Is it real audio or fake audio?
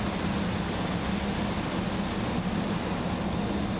real